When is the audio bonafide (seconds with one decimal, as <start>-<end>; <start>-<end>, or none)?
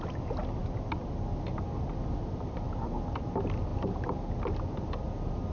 0.0-5.5